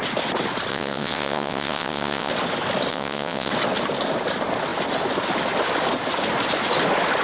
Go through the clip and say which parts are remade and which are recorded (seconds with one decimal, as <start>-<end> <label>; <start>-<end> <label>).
0.0-0.7 recorded; 0.7-2.3 remade; 2.3-2.9 recorded; 2.9-3.5 remade; 3.5-7.2 recorded